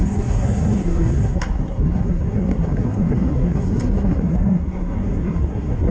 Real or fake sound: fake